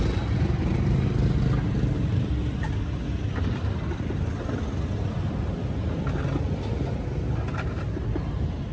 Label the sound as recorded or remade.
recorded